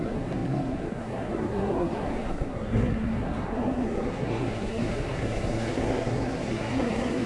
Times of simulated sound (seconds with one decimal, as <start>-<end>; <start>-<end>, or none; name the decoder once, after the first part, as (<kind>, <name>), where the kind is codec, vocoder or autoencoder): 0.0-7.3 (codec, SNAC)